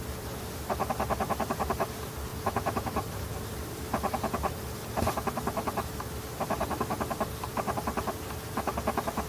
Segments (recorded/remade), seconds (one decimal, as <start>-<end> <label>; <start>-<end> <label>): 0.0-2.3 recorded; 2.3-3.8 remade; 3.8-9.3 recorded